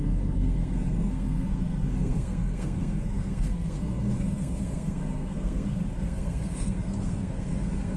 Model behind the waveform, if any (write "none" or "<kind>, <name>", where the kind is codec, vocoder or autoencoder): codec, SNAC